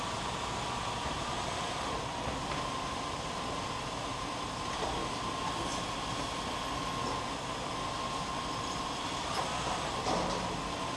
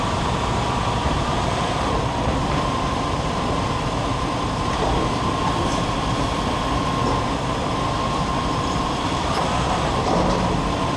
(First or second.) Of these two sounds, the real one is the first